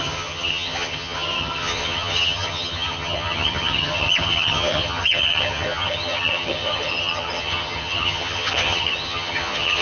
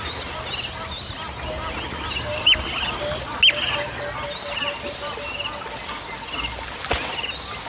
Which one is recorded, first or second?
second